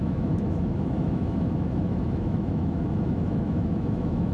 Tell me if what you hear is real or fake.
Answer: fake